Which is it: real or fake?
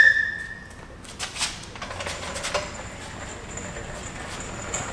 real